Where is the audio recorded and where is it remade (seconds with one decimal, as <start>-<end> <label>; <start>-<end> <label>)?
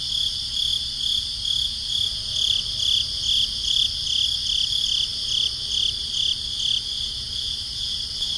0.0-8.4 recorded